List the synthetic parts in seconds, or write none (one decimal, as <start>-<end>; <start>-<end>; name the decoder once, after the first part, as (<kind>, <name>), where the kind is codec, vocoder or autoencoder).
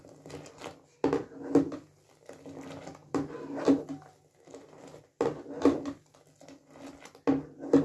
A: none